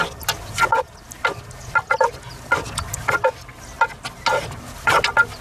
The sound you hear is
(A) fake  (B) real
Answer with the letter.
B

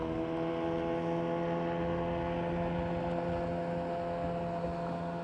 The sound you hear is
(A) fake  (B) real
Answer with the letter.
B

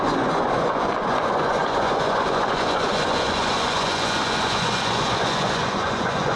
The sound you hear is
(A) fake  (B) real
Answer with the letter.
A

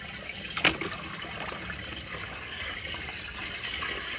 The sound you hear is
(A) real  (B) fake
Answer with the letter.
A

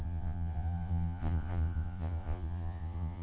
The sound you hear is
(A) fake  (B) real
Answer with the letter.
A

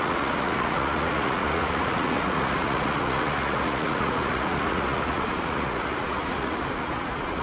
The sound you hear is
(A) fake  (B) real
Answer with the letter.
A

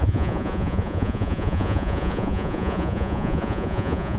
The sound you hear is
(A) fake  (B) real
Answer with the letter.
A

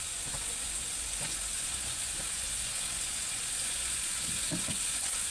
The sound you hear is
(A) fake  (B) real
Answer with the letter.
A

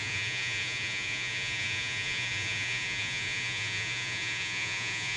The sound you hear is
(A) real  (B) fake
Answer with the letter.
B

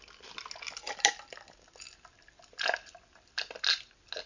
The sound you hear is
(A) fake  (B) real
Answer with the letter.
B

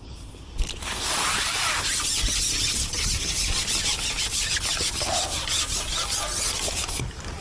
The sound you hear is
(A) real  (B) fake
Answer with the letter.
A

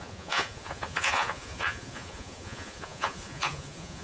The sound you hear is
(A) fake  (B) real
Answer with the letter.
A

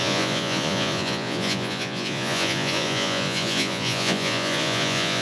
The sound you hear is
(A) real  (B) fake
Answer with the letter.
B